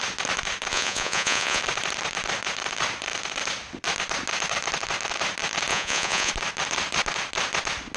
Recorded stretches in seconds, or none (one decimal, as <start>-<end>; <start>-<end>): 0.0-0.7; 1.6-5.7; 6.3-8.0